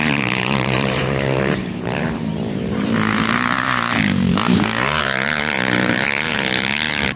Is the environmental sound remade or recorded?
remade